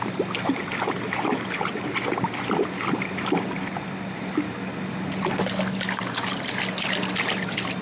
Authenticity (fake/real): real